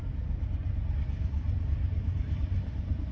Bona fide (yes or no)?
yes